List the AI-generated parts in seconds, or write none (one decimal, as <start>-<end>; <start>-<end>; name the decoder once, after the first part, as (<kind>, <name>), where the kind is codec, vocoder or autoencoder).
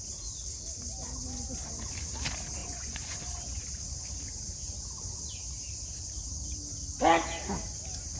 2.6-3.6 (vocoder, Vocos)